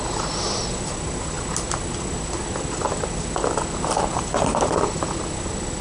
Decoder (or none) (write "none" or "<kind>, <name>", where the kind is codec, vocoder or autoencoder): none